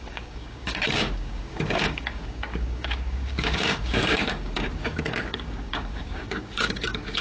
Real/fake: fake